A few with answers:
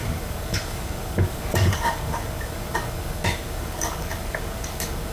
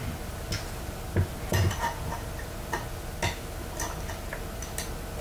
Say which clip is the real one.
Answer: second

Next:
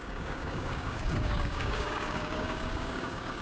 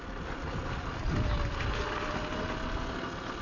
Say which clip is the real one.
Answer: second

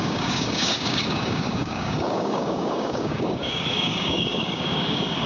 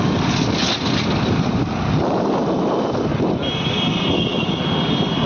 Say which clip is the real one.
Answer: second